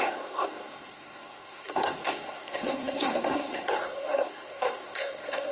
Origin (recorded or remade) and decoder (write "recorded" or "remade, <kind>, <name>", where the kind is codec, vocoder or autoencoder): remade, codec, SNAC